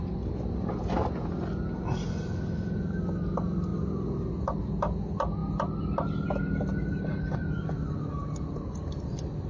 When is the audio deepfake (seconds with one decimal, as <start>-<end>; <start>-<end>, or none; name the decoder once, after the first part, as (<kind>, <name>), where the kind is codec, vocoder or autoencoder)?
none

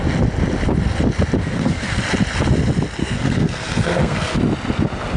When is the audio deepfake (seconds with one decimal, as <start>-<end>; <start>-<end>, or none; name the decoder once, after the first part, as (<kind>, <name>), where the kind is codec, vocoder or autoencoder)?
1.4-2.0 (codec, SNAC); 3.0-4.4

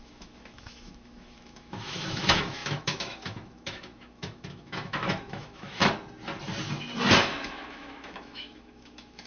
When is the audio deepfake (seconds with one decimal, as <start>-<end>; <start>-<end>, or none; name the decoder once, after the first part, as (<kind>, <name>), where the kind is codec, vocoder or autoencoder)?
0.0-5.8 (autoencoder, DAC-VAE); 7.2-9.3

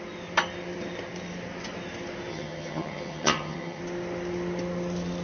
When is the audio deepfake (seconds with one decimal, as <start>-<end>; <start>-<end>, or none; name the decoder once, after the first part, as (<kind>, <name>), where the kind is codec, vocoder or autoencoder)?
2.3-3.8 (vocoder, HiFi-GAN)

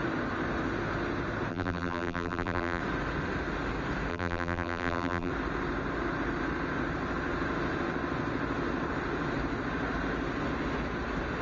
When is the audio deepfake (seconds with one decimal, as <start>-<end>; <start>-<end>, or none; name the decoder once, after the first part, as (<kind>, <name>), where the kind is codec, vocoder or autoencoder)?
1.5-2.8 (vocoder, BigVGAN v2); 4.1-5.3